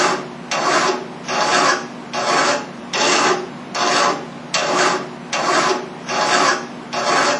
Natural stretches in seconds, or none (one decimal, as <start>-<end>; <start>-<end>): 0.0-7.4